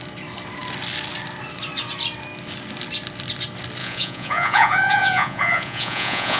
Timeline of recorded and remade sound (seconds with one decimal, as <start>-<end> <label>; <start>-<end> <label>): 0.0-3.8 recorded; 3.8-6.4 remade